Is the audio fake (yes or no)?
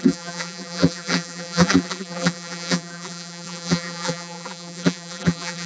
yes